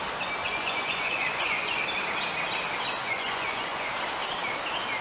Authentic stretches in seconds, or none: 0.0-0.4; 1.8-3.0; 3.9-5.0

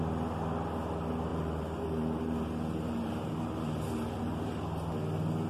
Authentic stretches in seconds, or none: 0.0-1.3; 4.6-5.5

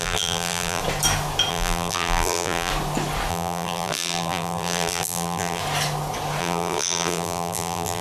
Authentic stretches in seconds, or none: 0.8-1.5; 2.7-3.3; 5.6-6.4

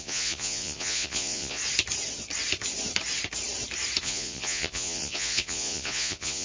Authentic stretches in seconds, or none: 1.6-4.0

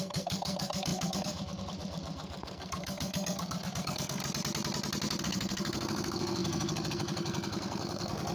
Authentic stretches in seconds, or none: 4.2-5.2

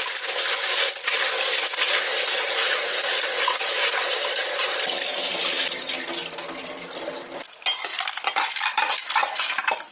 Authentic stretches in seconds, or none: 0.0-9.9